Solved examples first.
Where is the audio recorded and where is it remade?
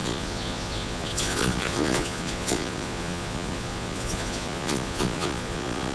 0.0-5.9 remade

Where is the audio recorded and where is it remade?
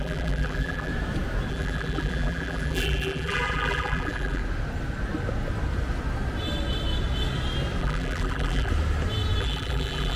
0.0-0.9 remade; 0.9-1.5 recorded; 1.5-4.4 remade; 4.4-7.8 recorded; 7.8-8.7 remade; 8.7-9.4 recorded; 9.4-10.2 remade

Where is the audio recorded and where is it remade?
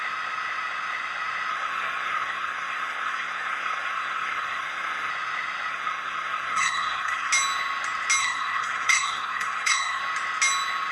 0.0-1.5 recorded; 1.5-5.1 remade; 5.1-5.7 recorded; 5.7-7.3 remade; 7.3-8.2 recorded; 8.2-10.0 remade; 10.0-10.9 recorded